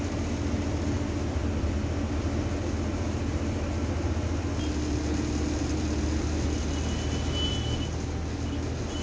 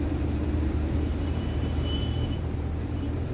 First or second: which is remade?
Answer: second